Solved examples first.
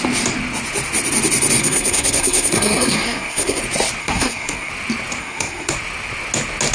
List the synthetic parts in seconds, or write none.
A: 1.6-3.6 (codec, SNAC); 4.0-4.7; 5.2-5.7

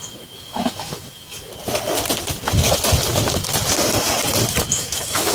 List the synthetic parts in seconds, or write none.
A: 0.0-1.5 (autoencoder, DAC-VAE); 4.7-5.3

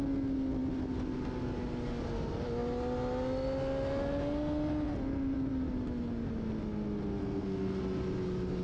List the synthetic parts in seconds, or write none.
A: 7.2-7.8 (codec, SNAC)